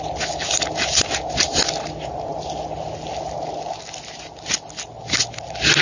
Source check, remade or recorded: recorded